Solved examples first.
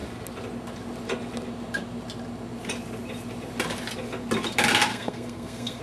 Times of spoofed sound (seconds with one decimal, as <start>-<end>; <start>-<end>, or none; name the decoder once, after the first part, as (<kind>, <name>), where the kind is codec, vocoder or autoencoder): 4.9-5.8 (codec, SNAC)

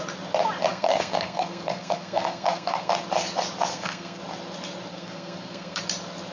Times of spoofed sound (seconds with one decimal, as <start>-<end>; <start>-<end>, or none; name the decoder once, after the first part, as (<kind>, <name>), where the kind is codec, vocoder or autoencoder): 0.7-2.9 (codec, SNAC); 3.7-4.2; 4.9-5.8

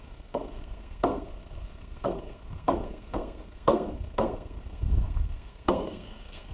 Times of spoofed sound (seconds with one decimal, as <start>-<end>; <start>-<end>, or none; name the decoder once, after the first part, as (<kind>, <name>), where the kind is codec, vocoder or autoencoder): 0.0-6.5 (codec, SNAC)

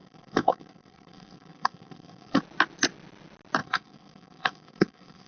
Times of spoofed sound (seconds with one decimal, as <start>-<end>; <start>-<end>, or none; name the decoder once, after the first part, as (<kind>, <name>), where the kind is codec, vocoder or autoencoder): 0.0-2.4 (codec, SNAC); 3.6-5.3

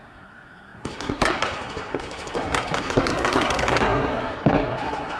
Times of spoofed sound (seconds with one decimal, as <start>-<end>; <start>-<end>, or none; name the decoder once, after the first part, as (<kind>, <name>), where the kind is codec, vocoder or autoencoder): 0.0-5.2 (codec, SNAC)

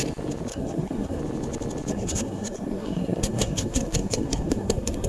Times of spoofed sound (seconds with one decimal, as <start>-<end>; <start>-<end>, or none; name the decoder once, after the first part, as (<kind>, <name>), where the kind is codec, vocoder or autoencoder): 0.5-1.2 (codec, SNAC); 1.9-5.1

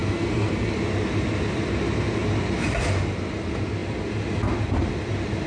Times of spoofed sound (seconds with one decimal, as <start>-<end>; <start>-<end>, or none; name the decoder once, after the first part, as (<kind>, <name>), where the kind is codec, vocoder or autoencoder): 0.0-0.7 (codec, SNAC)

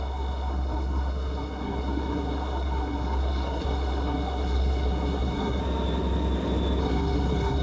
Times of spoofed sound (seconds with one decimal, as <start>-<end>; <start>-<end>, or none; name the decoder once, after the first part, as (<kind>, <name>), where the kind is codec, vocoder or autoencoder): 0.0-5.6 (codec, SNAC); 6.8-7.6